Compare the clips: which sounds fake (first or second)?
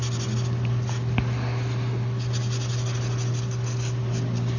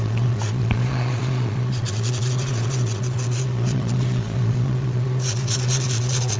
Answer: second